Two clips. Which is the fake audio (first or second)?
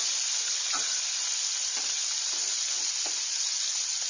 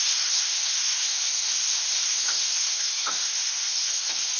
second